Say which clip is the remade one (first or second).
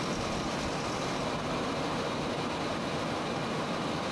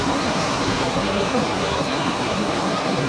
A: second